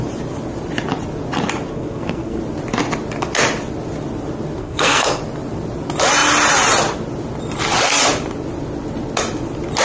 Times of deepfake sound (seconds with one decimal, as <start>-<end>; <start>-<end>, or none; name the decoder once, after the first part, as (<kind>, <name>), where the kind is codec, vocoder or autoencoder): 1.7-2.4 (codec, SNAC); 4.6-5.2